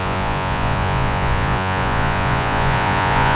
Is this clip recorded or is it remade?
remade